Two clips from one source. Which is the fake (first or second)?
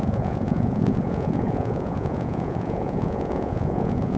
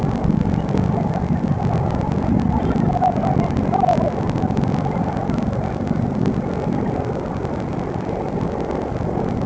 first